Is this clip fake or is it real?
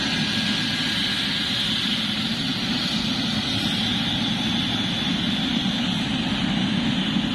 real